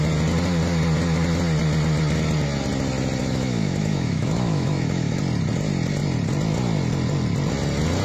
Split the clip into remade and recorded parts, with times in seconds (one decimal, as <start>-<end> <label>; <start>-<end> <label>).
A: 0.0-3.2 recorded; 3.2-5.2 remade; 5.2-8.0 recorded

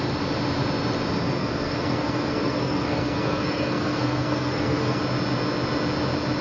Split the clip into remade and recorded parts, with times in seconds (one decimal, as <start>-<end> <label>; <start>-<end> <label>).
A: 0.0-1.4 recorded; 1.4-5.0 remade; 5.0-6.4 recorded

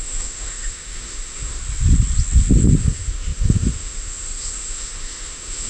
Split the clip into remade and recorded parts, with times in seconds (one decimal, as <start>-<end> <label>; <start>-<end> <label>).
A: 0.0-1.6 remade; 1.6-2.8 recorded; 2.8-5.7 remade

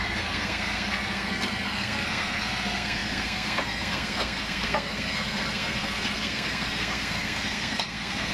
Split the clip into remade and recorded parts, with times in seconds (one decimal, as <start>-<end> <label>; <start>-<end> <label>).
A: 0.0-8.3 remade